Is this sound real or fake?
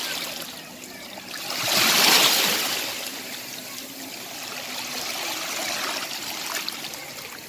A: real